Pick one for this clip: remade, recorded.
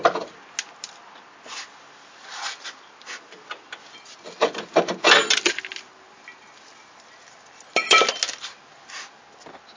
recorded